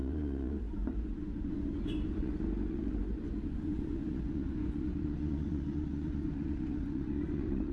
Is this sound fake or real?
fake